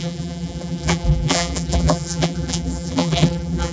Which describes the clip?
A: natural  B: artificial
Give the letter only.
B